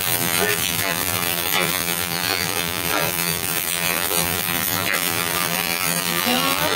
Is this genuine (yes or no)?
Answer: no